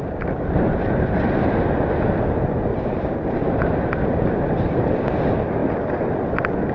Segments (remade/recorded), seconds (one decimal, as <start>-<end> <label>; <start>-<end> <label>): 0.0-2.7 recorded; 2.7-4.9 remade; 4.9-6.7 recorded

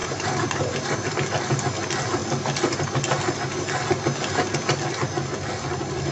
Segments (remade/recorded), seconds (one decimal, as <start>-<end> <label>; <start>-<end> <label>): 0.0-1.1 remade; 1.1-6.1 recorded

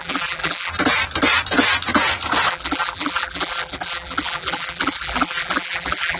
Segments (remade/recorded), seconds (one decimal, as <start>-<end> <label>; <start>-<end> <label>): 0.0-0.7 remade; 0.7-2.5 recorded; 2.5-6.2 remade

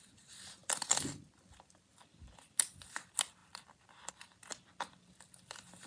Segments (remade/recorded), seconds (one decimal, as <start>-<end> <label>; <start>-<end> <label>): 0.0-0.6 recorded; 0.6-2.4 remade; 2.4-3.4 recorded; 3.4-4.1 remade; 4.1-5.9 recorded

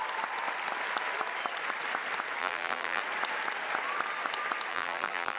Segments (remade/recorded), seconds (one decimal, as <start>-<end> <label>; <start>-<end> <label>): 0.0-2.4 recorded; 2.4-3.0 remade; 3.0-4.7 recorded; 4.7-5.4 remade

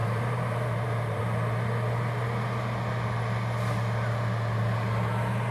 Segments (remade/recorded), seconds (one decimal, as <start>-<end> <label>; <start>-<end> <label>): 0.0-1.2 remade; 1.2-5.5 recorded

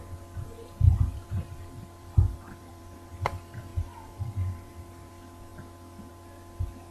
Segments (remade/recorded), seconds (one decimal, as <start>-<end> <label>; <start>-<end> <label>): 0.0-1.1 recorded; 1.1-3.1 remade; 3.1-3.7 recorded; 3.7-5.1 remade; 5.1-6.9 recorded

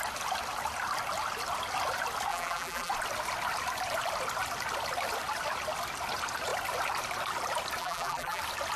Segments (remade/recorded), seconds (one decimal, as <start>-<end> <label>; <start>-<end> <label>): 0.0-2.3 recorded; 2.3-2.9 remade; 2.9-7.8 recorded; 7.8-8.4 remade; 8.4-8.8 recorded